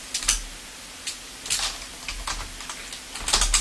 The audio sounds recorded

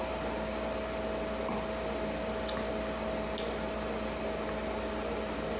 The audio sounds recorded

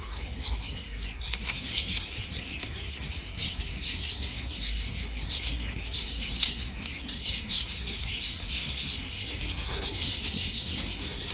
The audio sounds remade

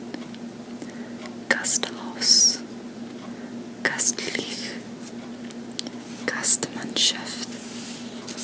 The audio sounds recorded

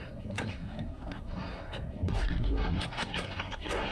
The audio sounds remade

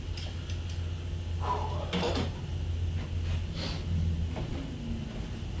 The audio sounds recorded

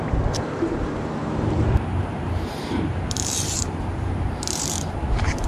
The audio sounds remade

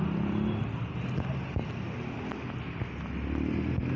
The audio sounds recorded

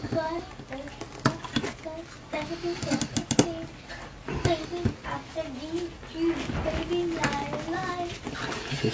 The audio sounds recorded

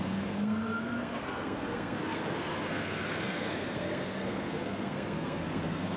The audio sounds remade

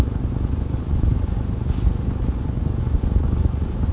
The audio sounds remade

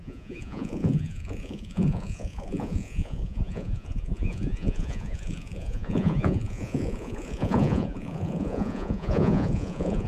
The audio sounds remade